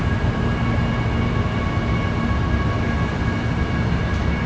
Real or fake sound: real